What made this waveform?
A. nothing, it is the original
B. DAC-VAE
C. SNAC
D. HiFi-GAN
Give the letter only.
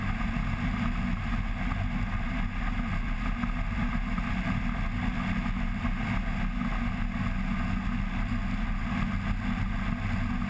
A